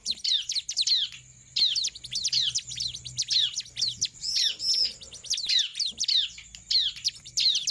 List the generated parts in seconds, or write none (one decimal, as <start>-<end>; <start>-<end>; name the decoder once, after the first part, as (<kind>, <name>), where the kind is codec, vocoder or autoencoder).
none